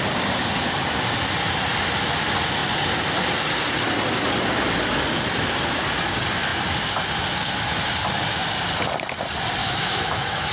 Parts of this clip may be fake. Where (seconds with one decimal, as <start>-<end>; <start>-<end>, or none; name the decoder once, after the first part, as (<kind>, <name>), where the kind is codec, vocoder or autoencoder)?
9.6-10.5 (autoencoder, DAC-VAE)